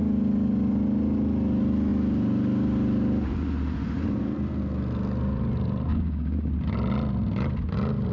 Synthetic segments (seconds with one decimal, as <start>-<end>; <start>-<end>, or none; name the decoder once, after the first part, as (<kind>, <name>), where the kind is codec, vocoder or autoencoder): 5.9-6.5 (codec, DAC)